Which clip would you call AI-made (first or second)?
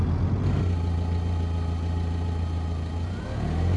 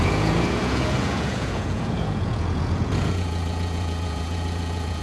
second